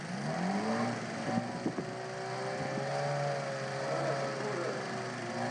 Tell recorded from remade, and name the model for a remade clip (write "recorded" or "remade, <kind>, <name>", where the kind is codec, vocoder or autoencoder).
recorded